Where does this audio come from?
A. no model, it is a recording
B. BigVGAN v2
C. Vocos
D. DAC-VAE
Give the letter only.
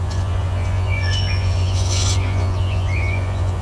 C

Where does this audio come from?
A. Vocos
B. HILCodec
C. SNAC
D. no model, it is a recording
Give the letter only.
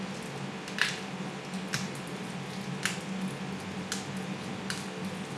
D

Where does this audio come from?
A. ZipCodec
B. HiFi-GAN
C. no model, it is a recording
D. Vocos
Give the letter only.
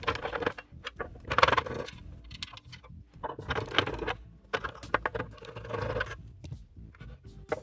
C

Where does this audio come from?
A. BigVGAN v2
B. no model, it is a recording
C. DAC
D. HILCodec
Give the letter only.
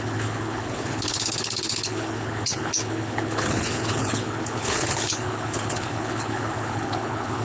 D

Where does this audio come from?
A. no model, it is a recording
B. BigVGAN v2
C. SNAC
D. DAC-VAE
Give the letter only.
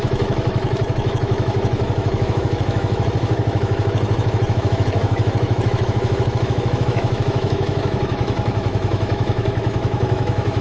D